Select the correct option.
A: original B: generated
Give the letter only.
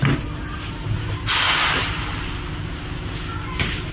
A